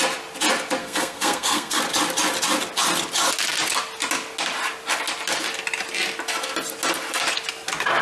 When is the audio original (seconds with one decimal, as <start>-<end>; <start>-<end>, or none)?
0.0-0.8; 1.8-8.0